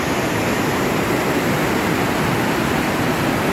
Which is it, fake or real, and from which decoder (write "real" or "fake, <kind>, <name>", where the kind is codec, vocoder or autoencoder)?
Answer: real